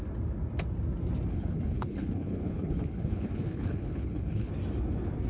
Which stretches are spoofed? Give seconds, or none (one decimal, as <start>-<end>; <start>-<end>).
1.3-4.5